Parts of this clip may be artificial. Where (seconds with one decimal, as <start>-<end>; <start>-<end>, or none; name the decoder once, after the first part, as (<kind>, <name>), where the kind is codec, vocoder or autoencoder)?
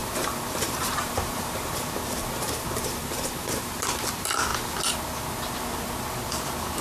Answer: 0.0-4.0 (vocoder, BigVGAN v2)